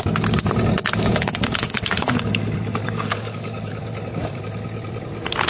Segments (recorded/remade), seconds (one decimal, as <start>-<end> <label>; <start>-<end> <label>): 0.0-1.1 recorded; 1.1-4.4 remade; 4.4-5.5 recorded